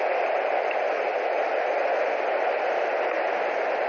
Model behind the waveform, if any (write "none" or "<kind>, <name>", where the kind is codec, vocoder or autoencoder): none